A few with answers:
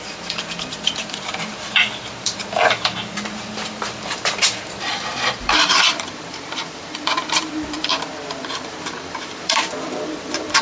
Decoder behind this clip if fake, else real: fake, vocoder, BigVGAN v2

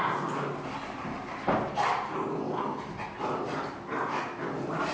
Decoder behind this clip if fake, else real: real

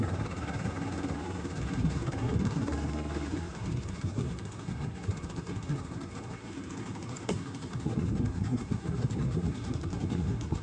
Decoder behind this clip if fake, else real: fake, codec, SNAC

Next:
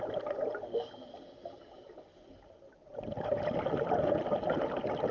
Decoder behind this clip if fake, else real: real